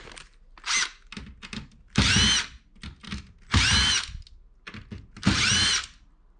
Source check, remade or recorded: recorded